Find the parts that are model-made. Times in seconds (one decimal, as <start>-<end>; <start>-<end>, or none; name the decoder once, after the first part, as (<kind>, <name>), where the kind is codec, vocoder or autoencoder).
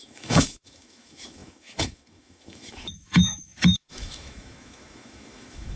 0.0-5.8 (autoencoder, DAC-VAE)